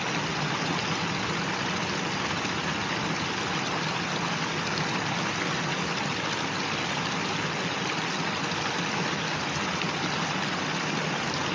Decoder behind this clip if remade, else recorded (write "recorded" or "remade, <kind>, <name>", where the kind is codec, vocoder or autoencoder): recorded